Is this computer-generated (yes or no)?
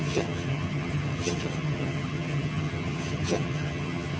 yes